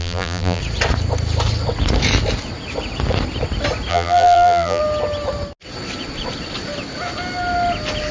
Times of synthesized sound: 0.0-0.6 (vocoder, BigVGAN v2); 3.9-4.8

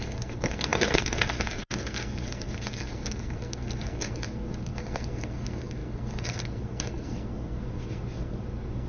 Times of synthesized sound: 0.0-8.9 (codec, SNAC)

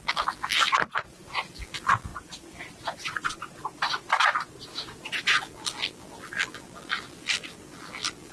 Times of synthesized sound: 0.0-0.7 (vocoder, BigVGAN v2); 1.5-2.1; 5.4-8.3

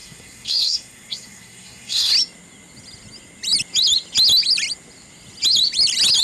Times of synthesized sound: 0.0-2.1 (codec, SNAC)

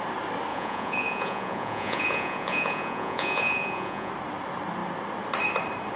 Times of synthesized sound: 0.5-4.1 (vocoder, Vocos)